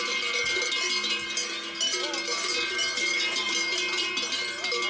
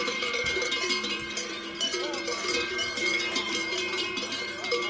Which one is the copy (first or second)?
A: second